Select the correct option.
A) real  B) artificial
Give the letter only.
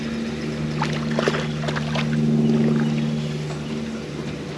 A